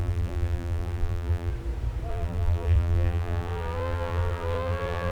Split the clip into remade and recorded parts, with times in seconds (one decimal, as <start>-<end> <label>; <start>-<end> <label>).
0.0-1.5 remade; 1.5-2.1 recorded; 2.1-5.1 remade